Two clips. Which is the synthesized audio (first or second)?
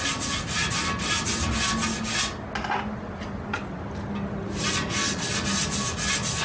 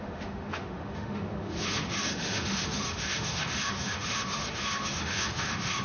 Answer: second